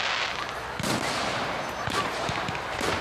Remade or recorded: recorded